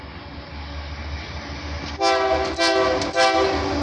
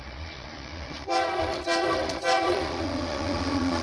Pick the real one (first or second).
first